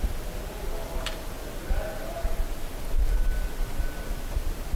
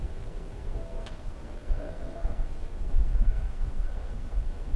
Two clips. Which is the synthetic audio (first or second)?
second